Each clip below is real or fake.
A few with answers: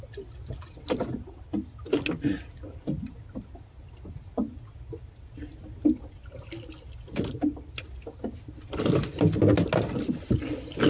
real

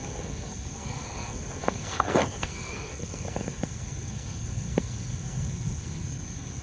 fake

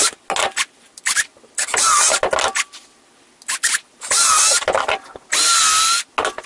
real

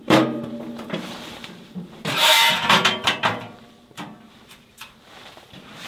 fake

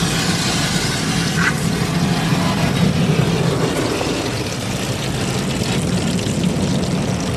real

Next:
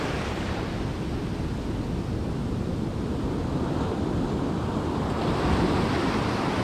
real